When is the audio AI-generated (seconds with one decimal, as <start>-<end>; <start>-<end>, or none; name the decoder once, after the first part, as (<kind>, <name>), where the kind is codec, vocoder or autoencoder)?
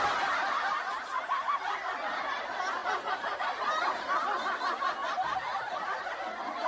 5.0-6.1 (vocoder, BigVGAN v2)